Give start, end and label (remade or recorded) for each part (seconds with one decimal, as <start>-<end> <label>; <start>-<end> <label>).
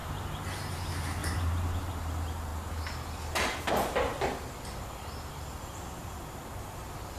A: 0.0-1.2 recorded; 1.2-1.9 remade; 1.9-7.2 recorded